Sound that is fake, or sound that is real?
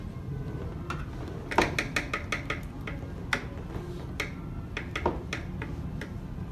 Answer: real